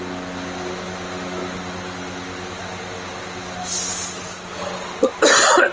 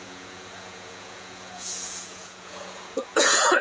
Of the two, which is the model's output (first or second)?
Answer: second